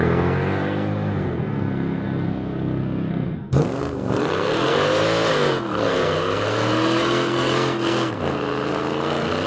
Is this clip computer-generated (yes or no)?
yes